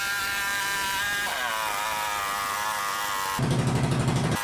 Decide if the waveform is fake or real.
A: real